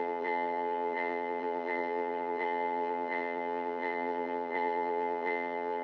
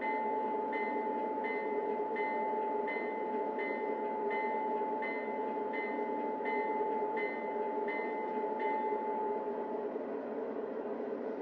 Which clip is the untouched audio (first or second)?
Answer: second